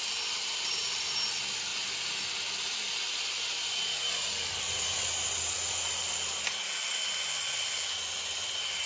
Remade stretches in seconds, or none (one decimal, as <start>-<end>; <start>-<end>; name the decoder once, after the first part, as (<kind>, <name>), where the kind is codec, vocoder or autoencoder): none